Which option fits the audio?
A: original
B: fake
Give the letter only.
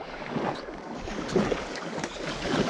B